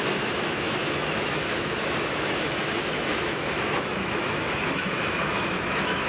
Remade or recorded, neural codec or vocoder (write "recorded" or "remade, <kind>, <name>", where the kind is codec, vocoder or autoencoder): remade, autoencoder, DAC-VAE